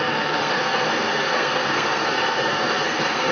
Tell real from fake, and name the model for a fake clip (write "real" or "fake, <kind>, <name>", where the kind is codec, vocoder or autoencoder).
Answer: fake, codec, SNAC